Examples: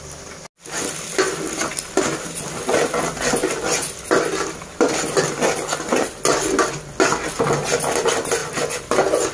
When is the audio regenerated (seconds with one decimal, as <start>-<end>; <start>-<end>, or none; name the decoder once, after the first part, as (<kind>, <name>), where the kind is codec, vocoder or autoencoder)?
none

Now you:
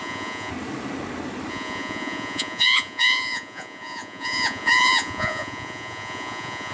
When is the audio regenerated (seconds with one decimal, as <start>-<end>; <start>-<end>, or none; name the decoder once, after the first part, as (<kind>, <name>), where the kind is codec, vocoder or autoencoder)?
0.0-0.5 (vocoder, Vocos); 1.5-6.7

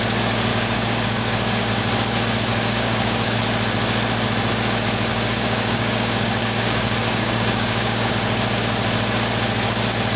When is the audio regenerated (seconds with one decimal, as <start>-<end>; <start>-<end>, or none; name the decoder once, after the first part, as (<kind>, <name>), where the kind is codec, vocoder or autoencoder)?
0.5-1.7 (codec, DAC); 2.5-3.4; 5.1-8.1

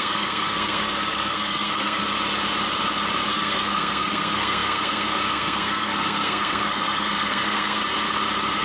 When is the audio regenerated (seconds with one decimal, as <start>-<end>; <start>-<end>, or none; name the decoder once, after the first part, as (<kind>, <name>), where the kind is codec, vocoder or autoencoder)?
0.0-2.0 (codec, SNAC); 3.3-7.8